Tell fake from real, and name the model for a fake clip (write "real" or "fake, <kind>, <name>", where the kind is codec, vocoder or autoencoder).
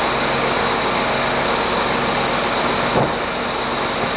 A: real